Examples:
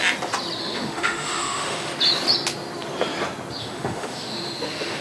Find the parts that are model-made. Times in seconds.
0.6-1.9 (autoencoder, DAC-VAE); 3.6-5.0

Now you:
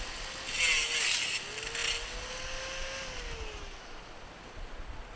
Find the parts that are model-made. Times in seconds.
none